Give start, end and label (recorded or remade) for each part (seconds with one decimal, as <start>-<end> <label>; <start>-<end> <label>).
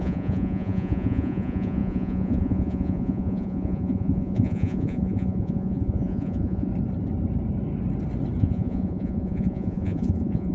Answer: 0.0-6.7 remade; 6.7-8.4 recorded; 8.4-10.5 remade